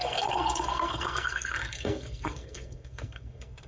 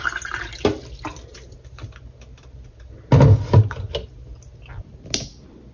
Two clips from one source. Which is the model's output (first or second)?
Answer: first